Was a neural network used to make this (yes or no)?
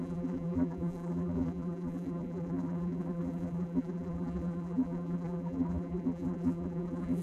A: yes